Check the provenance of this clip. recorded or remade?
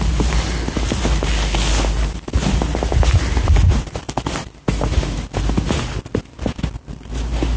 recorded